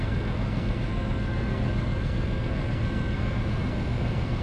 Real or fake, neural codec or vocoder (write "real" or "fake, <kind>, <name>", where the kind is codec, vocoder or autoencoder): fake, codec, SNAC